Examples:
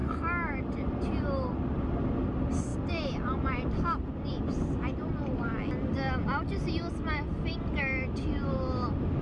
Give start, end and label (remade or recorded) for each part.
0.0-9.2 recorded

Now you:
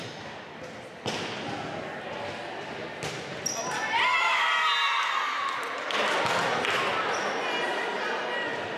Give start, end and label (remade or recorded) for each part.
0.0-8.8 recorded